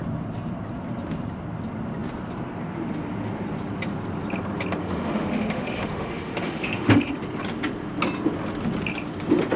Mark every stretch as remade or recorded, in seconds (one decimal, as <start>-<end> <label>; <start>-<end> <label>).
0.0-4.8 recorded; 4.8-7.1 remade; 7.1-9.6 recorded